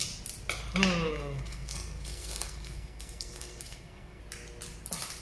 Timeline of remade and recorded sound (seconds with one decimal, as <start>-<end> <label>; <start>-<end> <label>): 0.0-1.1 recorded; 1.1-4.2 remade; 4.2-5.2 recorded